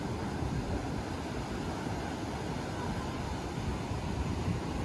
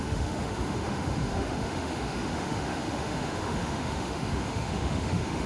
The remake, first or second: second